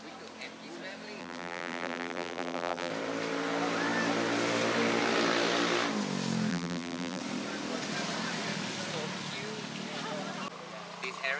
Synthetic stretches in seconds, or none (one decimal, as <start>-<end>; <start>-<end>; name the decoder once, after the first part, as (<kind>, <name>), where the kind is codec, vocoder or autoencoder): 1.2-2.9 (vocoder, BigVGAN v2); 6.5-7.2

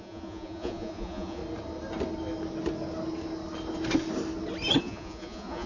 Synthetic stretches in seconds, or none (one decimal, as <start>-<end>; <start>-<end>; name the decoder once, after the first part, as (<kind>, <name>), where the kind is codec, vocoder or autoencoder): 0.0-1.4 (vocoder, Vocos); 4.8-5.7

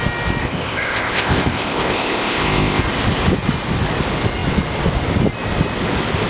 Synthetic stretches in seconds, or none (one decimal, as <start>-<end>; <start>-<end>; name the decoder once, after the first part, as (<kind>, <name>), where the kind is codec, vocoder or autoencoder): 0.4-2.8 (codec, ZipCodec)

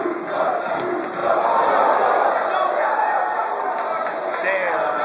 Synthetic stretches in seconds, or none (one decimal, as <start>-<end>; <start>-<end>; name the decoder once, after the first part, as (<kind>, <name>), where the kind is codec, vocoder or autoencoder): none

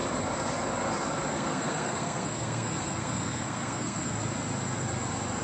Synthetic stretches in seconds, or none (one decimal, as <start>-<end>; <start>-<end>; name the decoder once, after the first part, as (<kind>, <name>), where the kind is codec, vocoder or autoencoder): 1.3-4.1 (codec, SNAC)

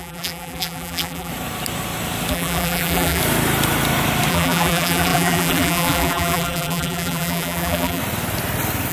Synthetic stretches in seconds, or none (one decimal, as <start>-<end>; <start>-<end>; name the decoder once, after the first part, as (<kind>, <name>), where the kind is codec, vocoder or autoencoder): 0.0-1.3 (vocoder, BigVGAN v2); 2.3-3.2; 4.3-8.0